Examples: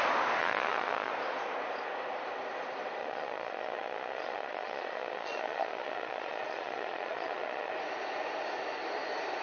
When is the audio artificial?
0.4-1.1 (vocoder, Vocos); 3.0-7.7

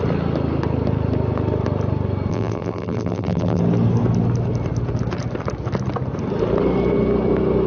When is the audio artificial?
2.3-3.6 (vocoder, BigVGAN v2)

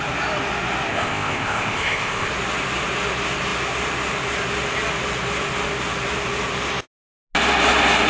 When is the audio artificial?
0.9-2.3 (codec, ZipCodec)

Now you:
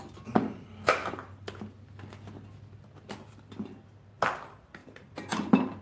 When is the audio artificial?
4.8-5.8 (vocoder, BigVGAN v2)

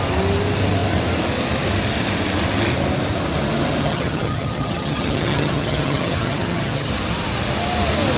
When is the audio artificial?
3.8-6.9 (vocoder, HiFi-GAN)

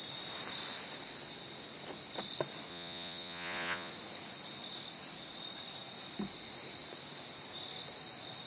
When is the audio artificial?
2.7-3.9 (vocoder, Vocos)

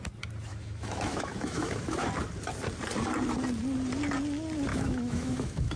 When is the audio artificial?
0.5-2.1 (autoencoder, DAC-VAE); 4.7-5.8